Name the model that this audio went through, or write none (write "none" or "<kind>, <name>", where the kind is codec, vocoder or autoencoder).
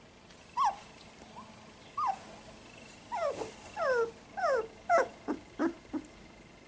none